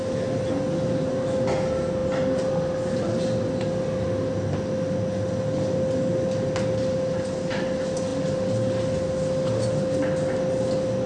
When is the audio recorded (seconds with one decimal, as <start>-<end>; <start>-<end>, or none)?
0.0-11.1